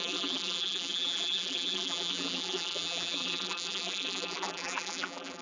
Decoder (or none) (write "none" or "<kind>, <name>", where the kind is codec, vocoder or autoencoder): vocoder, BigVGAN v2